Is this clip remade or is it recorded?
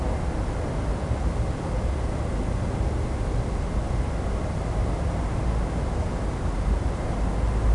recorded